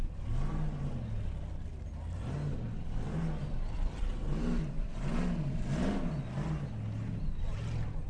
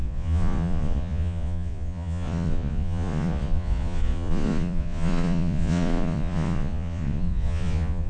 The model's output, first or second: second